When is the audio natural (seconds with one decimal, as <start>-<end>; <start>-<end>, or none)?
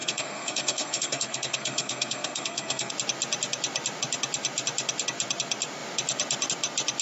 2.9-7.0